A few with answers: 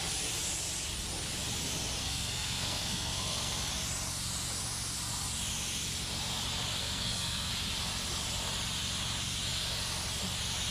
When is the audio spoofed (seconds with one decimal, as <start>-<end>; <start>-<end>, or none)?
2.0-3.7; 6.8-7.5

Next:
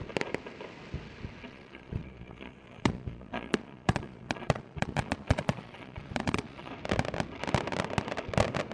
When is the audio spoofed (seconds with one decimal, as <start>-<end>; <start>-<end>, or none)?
1.5-6.7

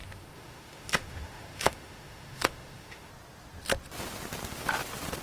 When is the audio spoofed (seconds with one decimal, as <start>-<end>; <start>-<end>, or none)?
0.0-3.1

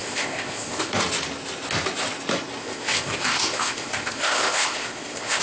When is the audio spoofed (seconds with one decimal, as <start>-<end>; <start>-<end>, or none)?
0.0-0.9; 2.6-5.4

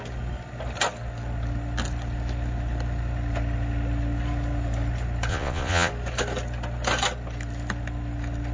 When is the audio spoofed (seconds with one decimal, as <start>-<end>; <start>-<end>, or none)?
5.3-5.9

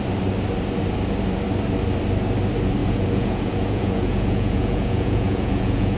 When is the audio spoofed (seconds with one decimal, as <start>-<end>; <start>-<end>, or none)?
2.8-6.0

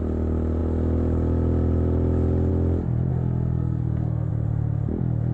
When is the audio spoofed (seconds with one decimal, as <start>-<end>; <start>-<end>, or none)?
3.1-4.3